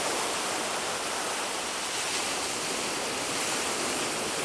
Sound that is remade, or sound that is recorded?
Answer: recorded